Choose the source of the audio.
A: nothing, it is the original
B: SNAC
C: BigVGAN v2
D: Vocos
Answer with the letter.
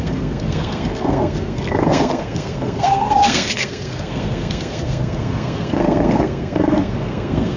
B